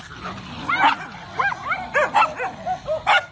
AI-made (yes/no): no